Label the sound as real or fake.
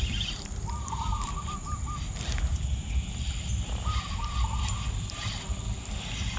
real